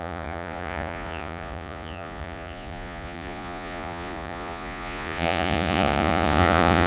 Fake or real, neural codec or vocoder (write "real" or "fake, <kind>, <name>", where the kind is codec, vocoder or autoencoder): fake, vocoder, Vocos